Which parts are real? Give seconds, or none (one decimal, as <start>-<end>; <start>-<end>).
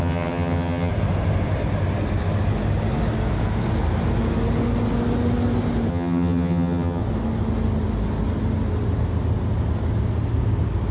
0.9-5.9; 7.0-10.9